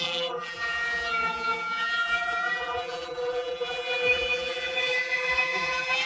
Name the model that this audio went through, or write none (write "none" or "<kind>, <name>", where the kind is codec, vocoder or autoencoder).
vocoder, BigVGAN v2